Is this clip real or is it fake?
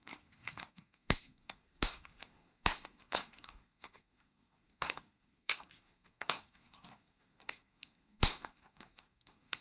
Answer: fake